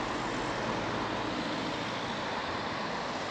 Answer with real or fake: real